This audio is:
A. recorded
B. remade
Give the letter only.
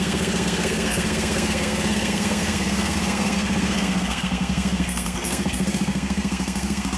B